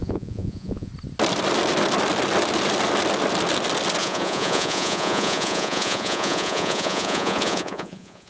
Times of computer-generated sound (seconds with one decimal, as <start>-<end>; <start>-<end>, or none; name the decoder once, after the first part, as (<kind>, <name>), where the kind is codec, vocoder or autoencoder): 0.0-0.9 (vocoder, Vocos); 4.0-8.3